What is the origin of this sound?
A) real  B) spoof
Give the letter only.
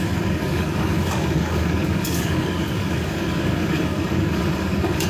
B